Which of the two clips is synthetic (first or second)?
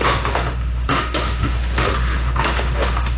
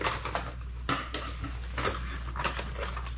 first